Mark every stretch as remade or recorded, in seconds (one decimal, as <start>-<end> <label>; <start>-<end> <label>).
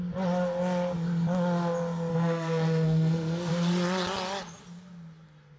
0.0-2.1 recorded; 2.1-3.5 remade; 3.5-5.6 recorded